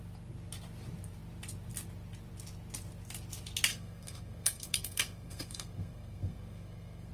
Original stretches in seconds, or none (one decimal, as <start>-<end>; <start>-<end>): 0.0-3.7

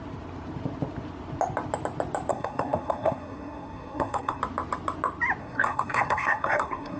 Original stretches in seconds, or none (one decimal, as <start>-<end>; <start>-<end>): 0.0-2.3; 4.4-5.4

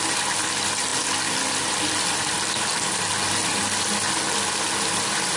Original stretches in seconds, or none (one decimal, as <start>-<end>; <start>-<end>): 0.0-5.4

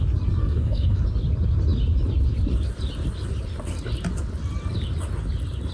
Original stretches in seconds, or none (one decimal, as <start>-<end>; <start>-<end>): 0.0-0.4; 1.0-5.7